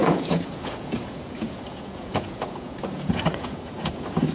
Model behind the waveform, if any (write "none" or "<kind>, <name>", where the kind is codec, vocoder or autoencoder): vocoder, Vocos